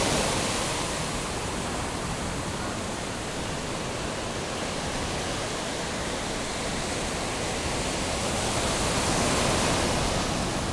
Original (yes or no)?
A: yes